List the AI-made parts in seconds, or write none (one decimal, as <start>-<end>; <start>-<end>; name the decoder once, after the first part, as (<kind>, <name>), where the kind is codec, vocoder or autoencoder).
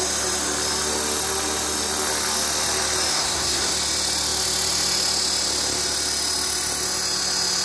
3.1-3.7 (codec, SNAC)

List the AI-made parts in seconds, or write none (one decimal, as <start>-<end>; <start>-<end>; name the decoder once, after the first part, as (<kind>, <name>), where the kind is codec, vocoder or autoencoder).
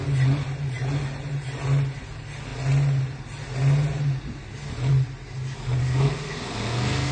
5.8-7.1 (codec, SNAC)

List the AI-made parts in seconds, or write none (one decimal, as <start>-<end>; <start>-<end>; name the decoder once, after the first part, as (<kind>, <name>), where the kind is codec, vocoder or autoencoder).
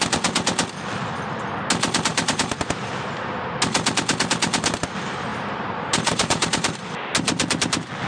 2.1-2.9 (vocoder, BigVGAN v2); 5.3-7.0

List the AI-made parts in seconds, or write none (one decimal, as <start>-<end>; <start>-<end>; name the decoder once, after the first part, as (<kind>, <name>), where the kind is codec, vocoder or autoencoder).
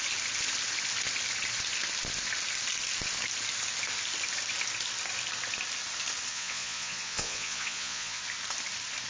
6.3-8.2 (vocoder, Vocos)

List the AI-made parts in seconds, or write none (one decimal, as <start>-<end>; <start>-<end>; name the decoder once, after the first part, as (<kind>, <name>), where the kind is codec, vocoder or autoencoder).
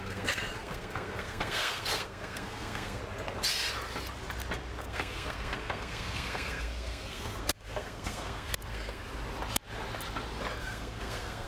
0.0-3.0 (codec, SNAC); 4.8-9.0; 10.6-11.5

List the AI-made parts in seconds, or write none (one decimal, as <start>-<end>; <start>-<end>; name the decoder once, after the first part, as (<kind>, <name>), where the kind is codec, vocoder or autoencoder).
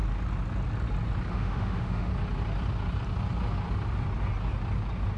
1.3-2.1 (autoencoder, DAC-VAE)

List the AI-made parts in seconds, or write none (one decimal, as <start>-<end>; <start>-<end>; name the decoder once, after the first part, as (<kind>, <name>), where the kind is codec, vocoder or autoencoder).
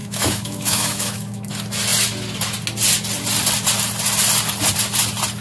0.0-1.5 (autoencoder, DAC-VAE)